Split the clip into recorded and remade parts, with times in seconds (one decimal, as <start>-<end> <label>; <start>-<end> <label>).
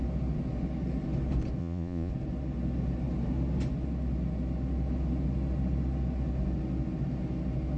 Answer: 0.0-1.6 recorded; 1.6-2.1 remade; 2.1-7.8 recorded